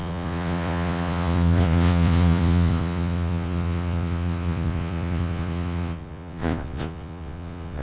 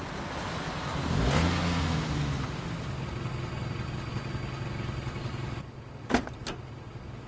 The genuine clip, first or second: second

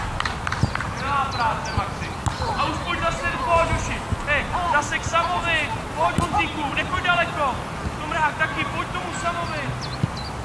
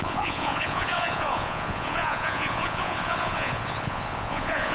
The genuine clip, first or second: first